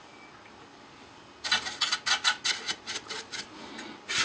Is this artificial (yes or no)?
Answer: no